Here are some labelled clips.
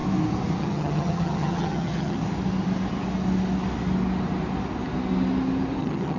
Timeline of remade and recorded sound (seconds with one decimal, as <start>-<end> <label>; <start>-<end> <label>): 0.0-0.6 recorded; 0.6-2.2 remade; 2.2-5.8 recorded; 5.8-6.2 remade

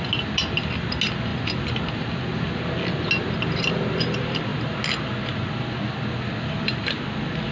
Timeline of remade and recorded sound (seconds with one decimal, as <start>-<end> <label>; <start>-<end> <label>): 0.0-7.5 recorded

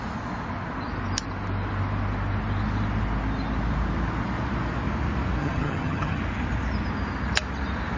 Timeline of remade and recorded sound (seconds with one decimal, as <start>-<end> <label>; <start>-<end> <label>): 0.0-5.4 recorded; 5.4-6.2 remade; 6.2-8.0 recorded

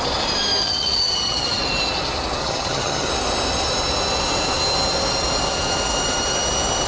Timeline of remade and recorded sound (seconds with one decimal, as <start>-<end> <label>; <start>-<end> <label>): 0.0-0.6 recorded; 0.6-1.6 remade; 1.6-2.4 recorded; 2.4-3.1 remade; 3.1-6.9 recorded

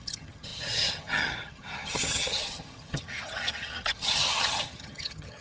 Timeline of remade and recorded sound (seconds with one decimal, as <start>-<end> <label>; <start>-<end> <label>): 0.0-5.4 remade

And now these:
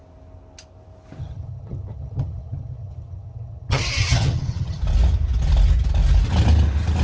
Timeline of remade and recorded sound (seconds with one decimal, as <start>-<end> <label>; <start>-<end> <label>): 0.0-1.2 recorded; 1.2-4.8 remade; 4.8-7.0 recorded

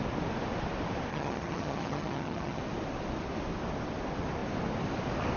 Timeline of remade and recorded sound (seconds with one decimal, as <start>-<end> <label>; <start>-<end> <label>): 0.0-1.1 recorded; 1.1-2.6 remade; 2.6-5.4 recorded

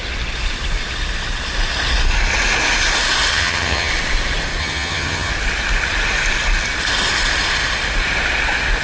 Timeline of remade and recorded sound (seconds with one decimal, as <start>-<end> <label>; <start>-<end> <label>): 0.0-3.3 recorded; 3.3-3.9 remade; 3.9-4.6 recorded; 4.6-5.3 remade; 5.3-8.8 recorded